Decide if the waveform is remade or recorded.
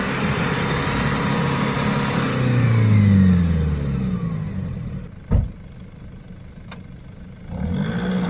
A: recorded